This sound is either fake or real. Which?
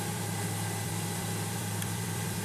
fake